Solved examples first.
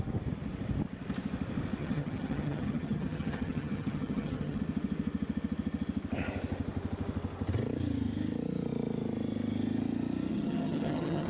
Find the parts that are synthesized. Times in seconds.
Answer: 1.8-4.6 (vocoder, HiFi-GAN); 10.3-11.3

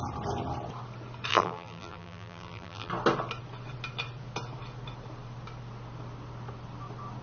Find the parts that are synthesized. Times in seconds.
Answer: 1.3-2.9 (vocoder, BigVGAN v2)

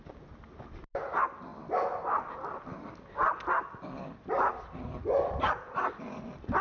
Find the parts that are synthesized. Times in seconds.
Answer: none

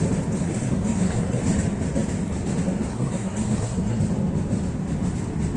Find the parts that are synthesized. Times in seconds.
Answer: 0.4-1.4 (codec, SNAC); 2.9-4.0